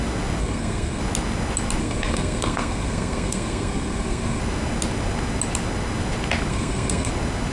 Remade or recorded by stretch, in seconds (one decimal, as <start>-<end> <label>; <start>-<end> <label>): 0.0-0.4 recorded; 0.4-1.0 remade; 1.0-1.8 recorded; 1.8-4.4 remade; 4.4-6.5 recorded; 6.5-7.1 remade; 7.1-7.5 recorded